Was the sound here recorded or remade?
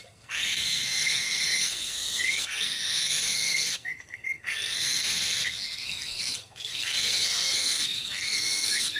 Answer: remade